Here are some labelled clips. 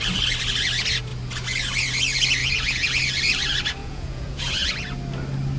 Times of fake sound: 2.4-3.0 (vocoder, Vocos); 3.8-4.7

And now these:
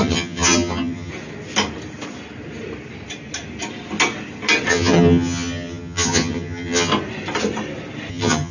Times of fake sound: 0.0-1.1 (vocoder, HiFi-GAN); 4.7-6.9; 8.1-8.5

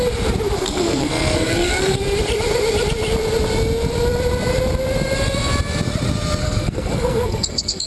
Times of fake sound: 0.6-2.0 (codec, SNAC); 6.4-7.9

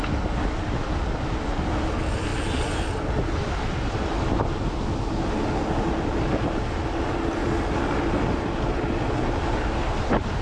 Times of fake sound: none